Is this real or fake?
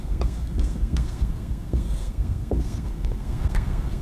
fake